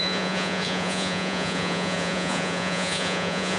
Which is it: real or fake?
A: fake